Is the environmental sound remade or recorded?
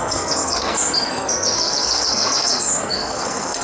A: remade